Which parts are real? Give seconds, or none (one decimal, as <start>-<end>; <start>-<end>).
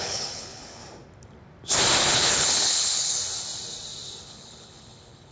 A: 0.8-2.0; 3.2-4.2